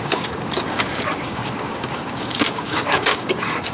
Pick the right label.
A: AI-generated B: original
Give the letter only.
A